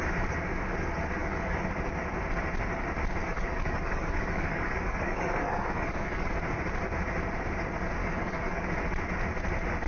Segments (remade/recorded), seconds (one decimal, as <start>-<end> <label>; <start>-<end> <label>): 0.0-1.2 recorded; 1.2-1.7 remade; 1.7-3.2 recorded; 3.2-6.3 remade; 6.3-8.0 recorded; 8.0-8.7 remade; 8.7-9.9 recorded